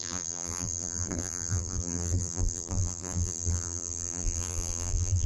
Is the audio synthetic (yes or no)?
yes